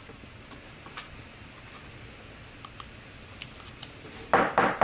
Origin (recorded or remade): recorded